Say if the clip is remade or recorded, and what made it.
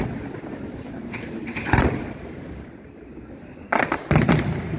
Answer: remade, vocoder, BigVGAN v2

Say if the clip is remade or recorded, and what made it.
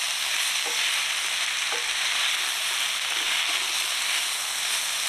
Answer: recorded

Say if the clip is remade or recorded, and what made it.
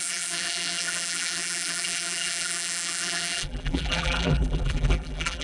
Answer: remade, vocoder, BigVGAN v2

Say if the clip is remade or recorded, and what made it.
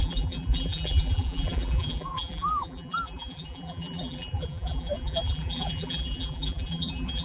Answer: remade, vocoder, BigVGAN v2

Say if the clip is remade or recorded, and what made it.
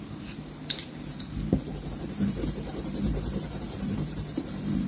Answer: remade, vocoder, BigVGAN v2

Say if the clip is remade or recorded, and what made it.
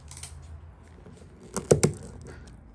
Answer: recorded